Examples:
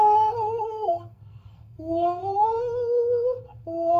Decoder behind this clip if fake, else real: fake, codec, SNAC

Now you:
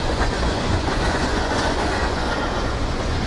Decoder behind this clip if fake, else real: fake, vocoder, Vocos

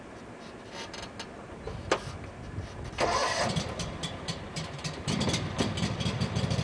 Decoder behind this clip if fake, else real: real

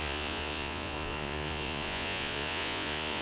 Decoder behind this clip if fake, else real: fake, vocoder, Vocos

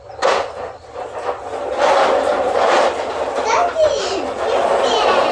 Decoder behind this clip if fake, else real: real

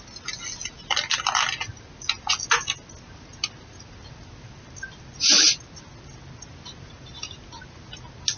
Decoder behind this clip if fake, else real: real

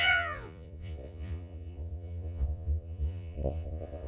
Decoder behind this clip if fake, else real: fake, vocoder, Vocos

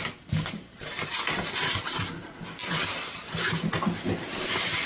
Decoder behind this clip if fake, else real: real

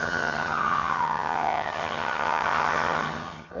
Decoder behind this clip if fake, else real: fake, vocoder, HiFi-GAN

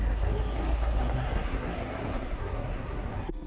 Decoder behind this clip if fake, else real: fake, codec, SNAC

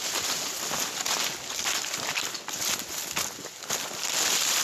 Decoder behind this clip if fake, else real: real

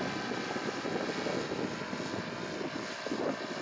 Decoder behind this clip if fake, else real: real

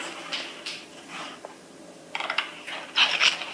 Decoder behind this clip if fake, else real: real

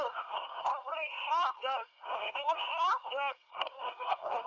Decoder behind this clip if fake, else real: fake, codec, SNAC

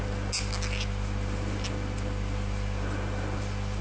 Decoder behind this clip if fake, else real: real